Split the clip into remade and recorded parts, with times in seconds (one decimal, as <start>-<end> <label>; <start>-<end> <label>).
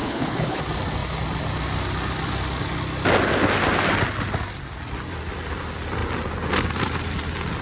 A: 0.0-0.6 remade; 0.6-7.6 recorded